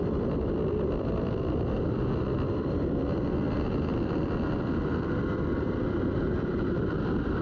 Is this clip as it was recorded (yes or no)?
no